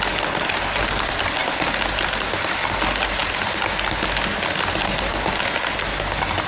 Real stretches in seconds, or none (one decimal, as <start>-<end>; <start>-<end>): 0.0-5.1